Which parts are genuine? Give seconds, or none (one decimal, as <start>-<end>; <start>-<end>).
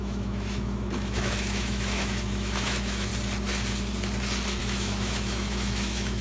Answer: 3.1-4.6